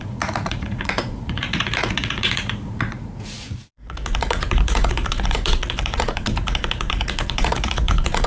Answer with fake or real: fake